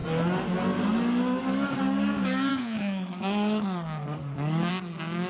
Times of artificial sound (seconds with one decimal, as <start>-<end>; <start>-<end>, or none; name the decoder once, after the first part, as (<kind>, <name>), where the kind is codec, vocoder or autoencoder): 2.5-4.7 (codec, DAC)